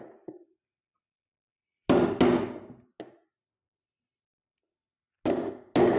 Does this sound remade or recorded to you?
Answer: recorded